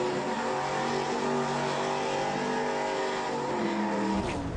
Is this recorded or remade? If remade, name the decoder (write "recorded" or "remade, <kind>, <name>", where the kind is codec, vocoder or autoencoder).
recorded